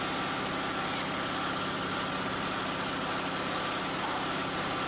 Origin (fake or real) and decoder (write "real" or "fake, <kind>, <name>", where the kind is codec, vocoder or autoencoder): real